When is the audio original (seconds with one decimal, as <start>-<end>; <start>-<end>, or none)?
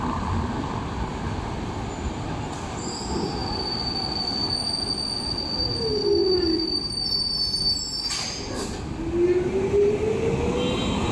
0.0-11.1